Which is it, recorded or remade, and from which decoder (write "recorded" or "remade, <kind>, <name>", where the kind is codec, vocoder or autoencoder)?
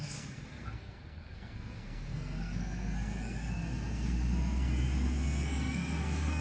remade, codec, SNAC